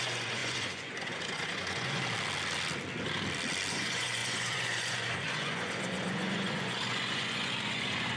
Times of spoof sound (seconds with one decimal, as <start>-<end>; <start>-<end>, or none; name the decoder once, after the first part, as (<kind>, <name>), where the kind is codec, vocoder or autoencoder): 0.0-2.0 (vocoder, Vocos); 3.7-8.2